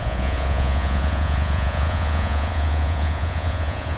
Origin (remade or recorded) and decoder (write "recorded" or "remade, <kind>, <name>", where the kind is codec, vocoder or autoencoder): remade, vocoder, Vocos